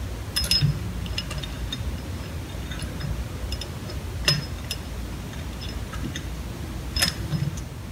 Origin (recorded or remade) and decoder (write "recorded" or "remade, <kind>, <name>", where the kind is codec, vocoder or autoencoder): recorded